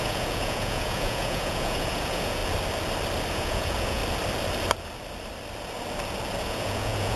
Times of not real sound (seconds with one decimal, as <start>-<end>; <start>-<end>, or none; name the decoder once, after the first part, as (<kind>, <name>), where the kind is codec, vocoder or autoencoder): 0.0-2.4 (vocoder, Vocos); 3.3-4.0; 6.4-7.2